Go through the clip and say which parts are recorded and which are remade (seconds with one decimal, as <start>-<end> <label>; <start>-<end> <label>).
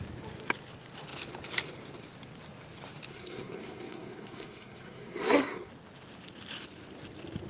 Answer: 0.0-3.1 recorded; 3.1-5.7 remade; 5.7-7.5 recorded